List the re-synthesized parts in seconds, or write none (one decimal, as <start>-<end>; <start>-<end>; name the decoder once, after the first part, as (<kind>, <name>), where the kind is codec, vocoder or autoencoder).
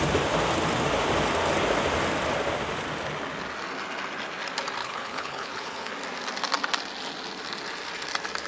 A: 4.8-5.9 (codec, HILCodec)